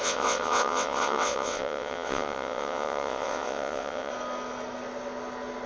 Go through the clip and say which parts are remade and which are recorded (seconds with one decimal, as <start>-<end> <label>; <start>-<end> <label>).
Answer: 0.0-4.1 remade; 4.1-5.7 recorded

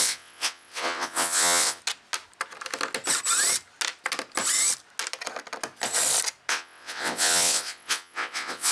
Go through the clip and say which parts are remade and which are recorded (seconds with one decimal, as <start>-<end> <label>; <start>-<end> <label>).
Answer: 0.0-1.8 remade; 1.8-6.5 recorded; 6.5-8.7 remade